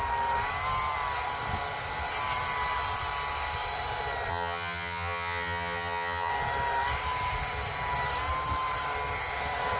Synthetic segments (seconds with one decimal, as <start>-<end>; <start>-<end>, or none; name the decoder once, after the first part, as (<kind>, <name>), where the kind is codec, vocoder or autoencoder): 4.3-6.3 (vocoder, HiFi-GAN)